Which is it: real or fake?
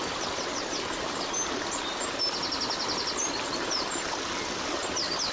real